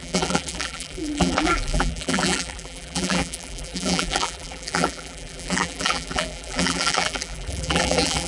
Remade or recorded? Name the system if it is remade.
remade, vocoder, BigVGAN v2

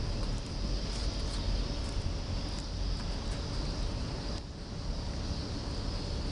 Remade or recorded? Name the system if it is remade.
recorded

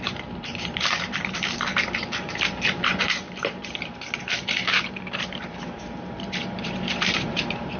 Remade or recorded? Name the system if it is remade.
remade, vocoder, BigVGAN v2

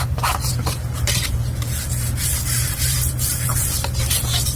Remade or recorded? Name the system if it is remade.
remade, vocoder, BigVGAN v2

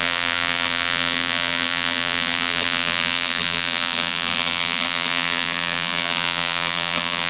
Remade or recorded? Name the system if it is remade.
remade, vocoder, BigVGAN v2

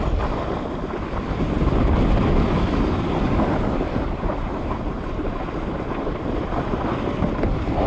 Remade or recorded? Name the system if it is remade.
recorded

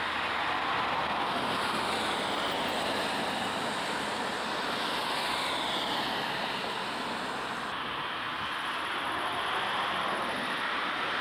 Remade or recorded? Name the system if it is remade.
recorded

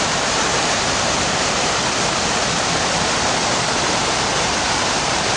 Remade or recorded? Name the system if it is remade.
remade, vocoder, BigVGAN v2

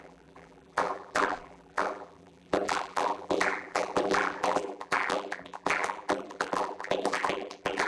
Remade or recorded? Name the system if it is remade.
remade, vocoder, BigVGAN v2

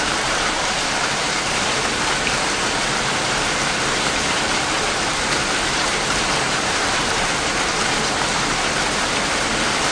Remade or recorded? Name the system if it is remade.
remade, vocoder, BigVGAN v2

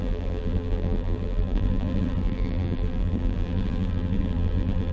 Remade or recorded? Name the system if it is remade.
remade, vocoder, BigVGAN v2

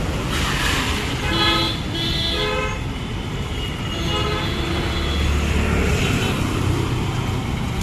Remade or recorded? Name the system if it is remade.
recorded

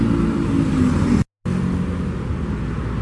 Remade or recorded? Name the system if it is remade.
recorded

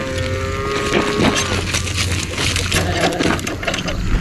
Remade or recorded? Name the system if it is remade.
recorded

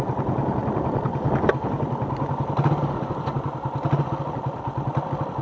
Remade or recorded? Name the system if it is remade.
remade, vocoder, BigVGAN v2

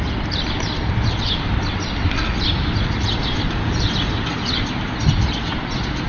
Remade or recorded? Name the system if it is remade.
remade, vocoder, BigVGAN v2